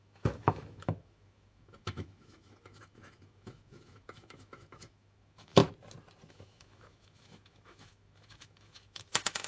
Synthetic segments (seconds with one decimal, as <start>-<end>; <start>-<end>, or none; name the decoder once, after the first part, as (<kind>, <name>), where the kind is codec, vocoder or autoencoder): 0.0-5.6 (autoencoder, DAC-VAE); 6.3-9.5